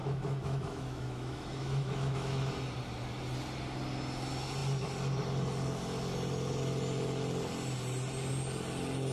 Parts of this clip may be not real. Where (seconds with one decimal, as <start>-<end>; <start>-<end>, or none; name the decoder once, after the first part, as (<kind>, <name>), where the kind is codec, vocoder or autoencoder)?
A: 0.0-2.5 (autoencoder, DAC-VAE)